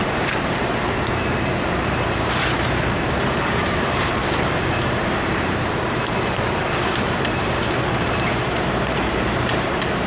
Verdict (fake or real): fake